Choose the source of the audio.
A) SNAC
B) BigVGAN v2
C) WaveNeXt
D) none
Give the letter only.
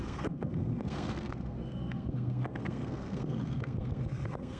A